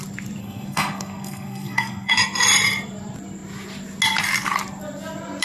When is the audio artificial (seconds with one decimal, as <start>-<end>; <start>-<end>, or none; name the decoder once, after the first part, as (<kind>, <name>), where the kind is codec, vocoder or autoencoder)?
0.4-2.1 (codec, SNAC)